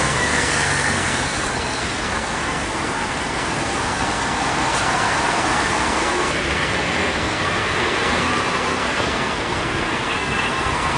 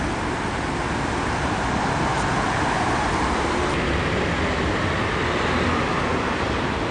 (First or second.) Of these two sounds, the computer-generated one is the first